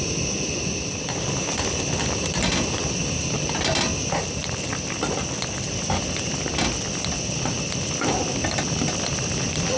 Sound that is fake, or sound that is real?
real